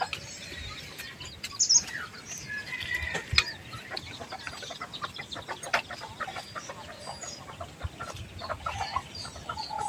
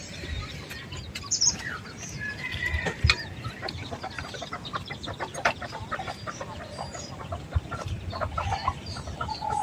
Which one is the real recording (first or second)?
first